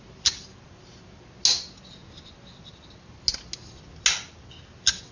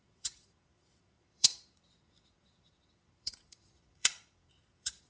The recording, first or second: first